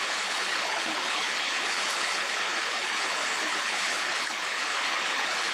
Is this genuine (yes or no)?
no